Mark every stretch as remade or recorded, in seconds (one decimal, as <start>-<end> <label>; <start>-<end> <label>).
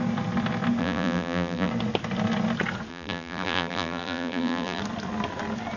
0.0-0.8 recorded; 0.8-1.7 remade; 1.7-2.9 recorded; 2.9-4.8 remade; 4.8-5.8 recorded